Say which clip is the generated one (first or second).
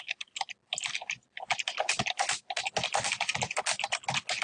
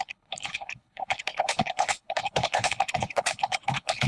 second